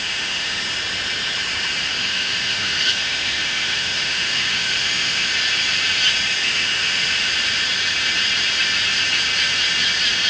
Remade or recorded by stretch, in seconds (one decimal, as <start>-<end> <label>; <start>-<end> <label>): 0.0-0.6 remade; 0.6-2.0 recorded; 2.0-5.3 remade; 5.3-6.4 recorded; 6.4-7.3 remade; 7.3-10.3 recorded